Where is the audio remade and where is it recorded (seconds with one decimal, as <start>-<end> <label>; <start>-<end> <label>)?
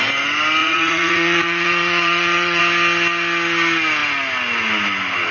0.0-0.6 recorded; 0.6-2.6 remade; 2.6-5.3 recorded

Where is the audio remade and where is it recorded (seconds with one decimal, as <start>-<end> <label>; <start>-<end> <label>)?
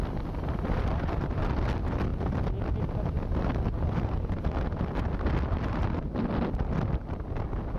0.0-7.8 recorded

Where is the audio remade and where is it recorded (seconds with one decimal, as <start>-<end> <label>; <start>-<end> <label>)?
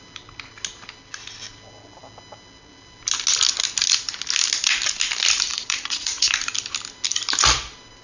0.0-5.5 recorded; 5.5-6.3 remade; 6.3-8.0 recorded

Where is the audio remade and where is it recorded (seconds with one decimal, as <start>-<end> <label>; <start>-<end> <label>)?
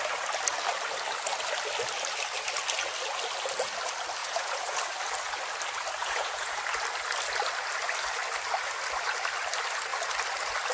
0.0-4.2 recorded; 4.2-4.8 remade; 4.8-6.0 recorded; 6.0-6.6 remade; 6.6-10.7 recorded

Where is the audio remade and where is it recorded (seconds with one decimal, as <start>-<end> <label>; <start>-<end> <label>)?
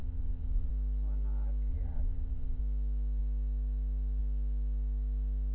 0.0-0.7 remade; 0.7-1.7 recorded; 1.7-2.6 remade; 2.6-5.5 recorded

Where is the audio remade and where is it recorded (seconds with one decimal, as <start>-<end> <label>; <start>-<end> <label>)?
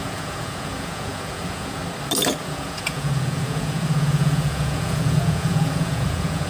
0.0-1.8 remade; 1.8-2.4 recorded; 2.4-6.5 remade